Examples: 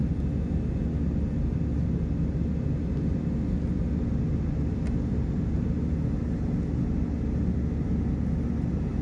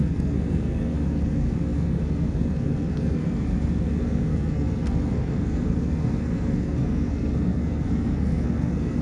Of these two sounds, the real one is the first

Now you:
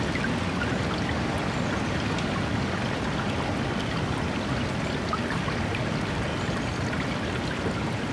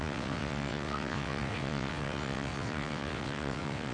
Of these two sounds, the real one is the first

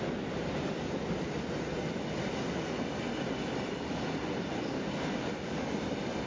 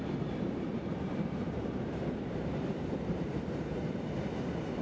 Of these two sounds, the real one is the first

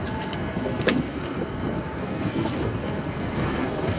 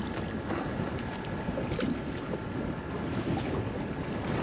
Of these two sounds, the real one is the second